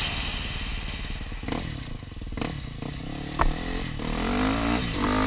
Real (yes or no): yes